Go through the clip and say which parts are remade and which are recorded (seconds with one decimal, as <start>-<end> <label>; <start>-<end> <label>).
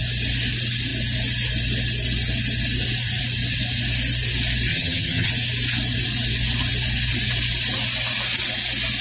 0.0-4.7 recorded; 4.7-5.3 remade; 5.3-9.0 recorded